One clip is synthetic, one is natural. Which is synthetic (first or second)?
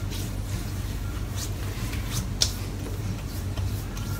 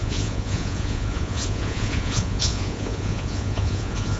second